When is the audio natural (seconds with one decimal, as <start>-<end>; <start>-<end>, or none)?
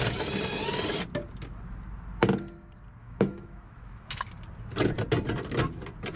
0.0-3.0; 4.2-6.2